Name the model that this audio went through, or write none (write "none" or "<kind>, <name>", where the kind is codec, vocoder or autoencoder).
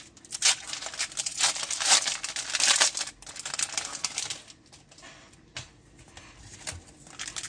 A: none